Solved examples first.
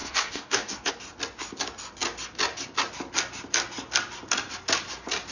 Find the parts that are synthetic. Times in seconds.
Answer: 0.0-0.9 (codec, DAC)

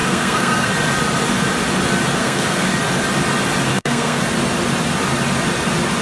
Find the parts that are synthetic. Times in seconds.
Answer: 0.0-0.7 (codec, SNAC); 2.2-2.7; 3.7-4.2

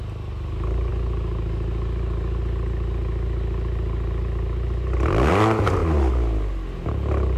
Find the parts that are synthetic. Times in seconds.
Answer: none

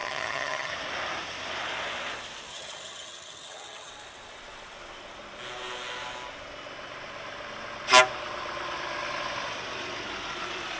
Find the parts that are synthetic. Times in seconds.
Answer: 0.0-0.7 (vocoder, HiFi-GAN); 2.5-3.9

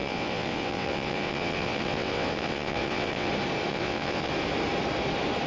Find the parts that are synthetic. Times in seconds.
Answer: 0.0-3.3 (vocoder, WaveNeXt); 3.7-4.3